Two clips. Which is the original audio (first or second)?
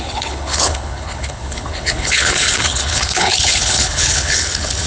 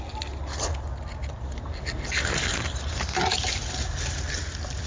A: second